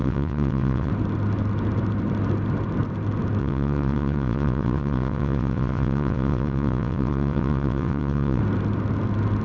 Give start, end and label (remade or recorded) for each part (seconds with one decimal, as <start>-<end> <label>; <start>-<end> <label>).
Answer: 0.0-0.9 remade; 0.9-3.4 recorded; 3.4-8.4 remade; 8.4-9.4 recorded